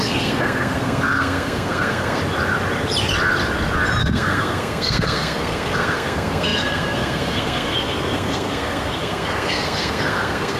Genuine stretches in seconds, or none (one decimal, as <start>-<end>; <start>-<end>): 2.2-4.0

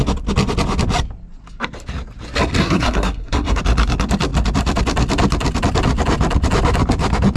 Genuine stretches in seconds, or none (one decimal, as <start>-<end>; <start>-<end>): 0.0-2.6; 3.6-7.4

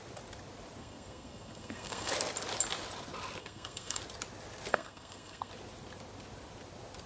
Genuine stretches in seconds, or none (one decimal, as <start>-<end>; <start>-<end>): 0.0-0.8; 2.1-3.4; 4.0-4.7; 5.5-7.1

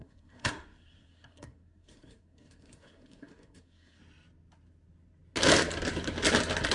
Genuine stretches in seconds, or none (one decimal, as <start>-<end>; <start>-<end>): 4.0-6.7

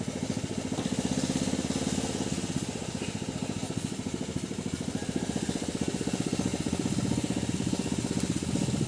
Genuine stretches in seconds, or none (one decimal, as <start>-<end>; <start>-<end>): 0.0-8.9

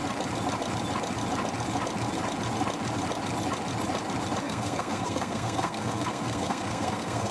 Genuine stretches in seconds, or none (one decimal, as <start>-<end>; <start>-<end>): 0.0-4.4